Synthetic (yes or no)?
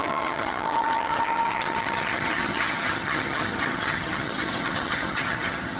yes